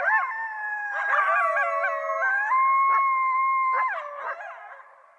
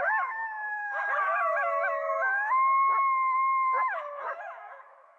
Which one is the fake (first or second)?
second